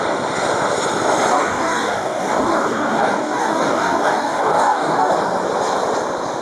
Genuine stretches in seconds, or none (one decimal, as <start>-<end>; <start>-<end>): 0.0-1.3; 5.1-6.4